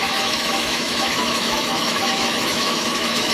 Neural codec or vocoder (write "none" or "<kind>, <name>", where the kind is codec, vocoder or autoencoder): autoencoder, DAC-VAE